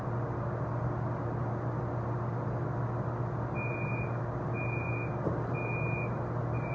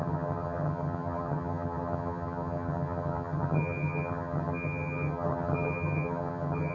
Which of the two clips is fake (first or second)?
second